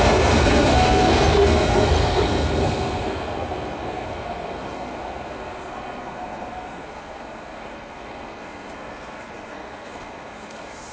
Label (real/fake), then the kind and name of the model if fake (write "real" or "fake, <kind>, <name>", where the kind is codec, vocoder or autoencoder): fake, codec, SNAC